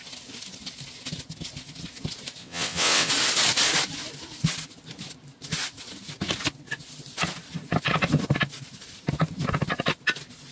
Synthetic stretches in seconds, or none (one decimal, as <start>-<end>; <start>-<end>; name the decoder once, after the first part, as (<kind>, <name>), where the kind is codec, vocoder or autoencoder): 2.4-3.1 (vocoder, WaveNeXt)